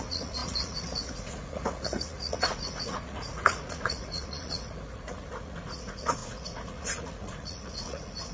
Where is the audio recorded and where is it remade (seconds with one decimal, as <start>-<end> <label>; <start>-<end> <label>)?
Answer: 0.0-8.3 remade